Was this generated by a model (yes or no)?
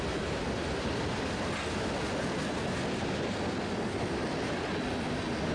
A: no